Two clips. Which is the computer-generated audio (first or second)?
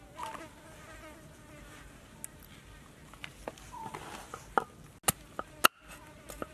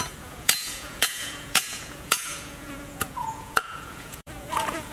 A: second